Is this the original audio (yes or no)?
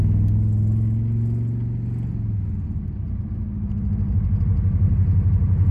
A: yes